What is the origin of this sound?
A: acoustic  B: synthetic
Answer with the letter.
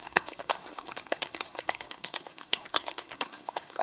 B